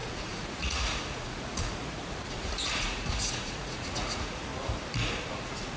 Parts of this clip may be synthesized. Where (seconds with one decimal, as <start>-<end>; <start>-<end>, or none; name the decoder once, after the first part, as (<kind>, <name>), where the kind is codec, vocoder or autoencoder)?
0.0-4.5 (vocoder, Vocos); 5.3-5.8